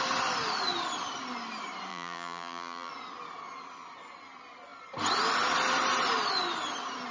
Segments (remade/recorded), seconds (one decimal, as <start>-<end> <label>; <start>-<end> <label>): 0.0-1.9 recorded; 1.9-2.9 remade; 2.9-7.1 recorded